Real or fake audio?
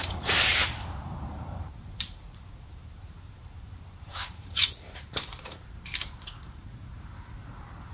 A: fake